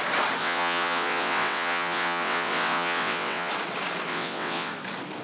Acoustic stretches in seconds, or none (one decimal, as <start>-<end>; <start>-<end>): 0.0-0.4; 3.5-4.1; 4.7-5.2